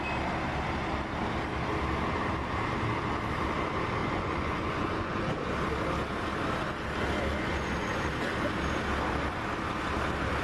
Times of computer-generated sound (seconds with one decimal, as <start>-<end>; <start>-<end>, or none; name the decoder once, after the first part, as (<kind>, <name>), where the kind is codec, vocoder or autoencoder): 4.0-5.5 (vocoder, Vocos); 7.3-8.1